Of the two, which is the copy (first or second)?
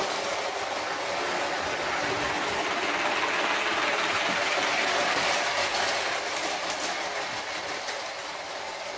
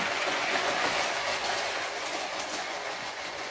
second